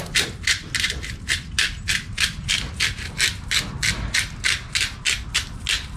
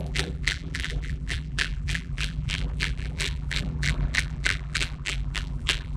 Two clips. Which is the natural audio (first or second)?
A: first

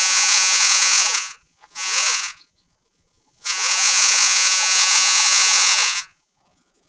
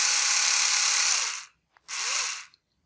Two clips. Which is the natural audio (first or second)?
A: second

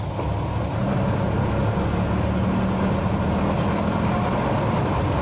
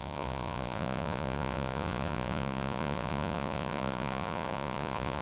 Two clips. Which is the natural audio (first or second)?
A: first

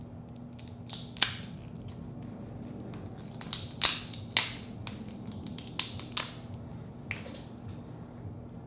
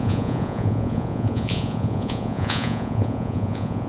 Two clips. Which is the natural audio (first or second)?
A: first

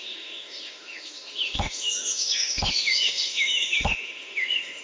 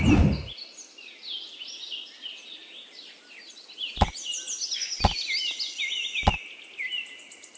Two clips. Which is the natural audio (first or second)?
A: second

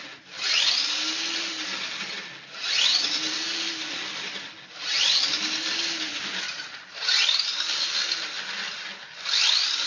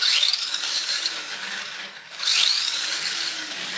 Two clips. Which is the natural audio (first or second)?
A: first